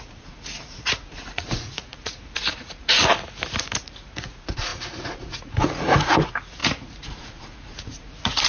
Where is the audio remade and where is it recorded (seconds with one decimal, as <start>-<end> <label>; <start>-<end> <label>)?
0.0-3.0 remade; 3.0-3.8 recorded; 3.8-8.5 remade